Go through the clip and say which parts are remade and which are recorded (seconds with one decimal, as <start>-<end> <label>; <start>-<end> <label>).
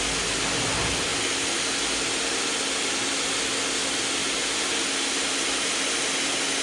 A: 0.0-6.6 recorded